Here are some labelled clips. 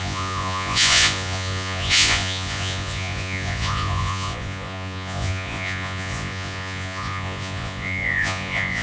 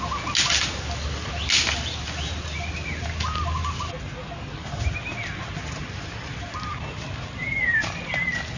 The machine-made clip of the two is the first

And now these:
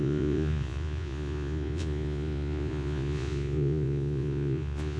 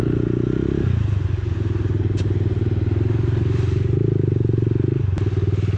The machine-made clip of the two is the first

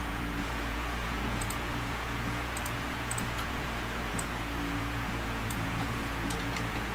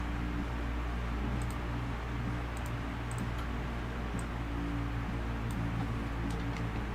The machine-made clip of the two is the first